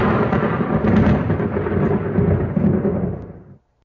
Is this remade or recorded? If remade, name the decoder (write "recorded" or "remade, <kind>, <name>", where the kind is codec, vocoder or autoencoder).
recorded